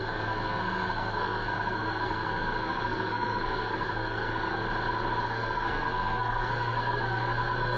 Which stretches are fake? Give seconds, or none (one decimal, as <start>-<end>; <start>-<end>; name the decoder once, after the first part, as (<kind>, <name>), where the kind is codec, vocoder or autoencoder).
0.0-4.6 (codec, SNAC); 5.2-7.8